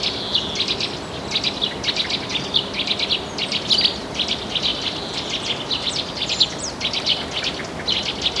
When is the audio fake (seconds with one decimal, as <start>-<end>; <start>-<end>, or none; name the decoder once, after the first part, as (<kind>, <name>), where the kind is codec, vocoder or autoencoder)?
none